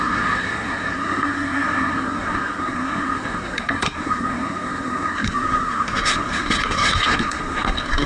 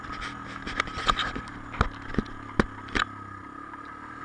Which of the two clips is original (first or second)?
second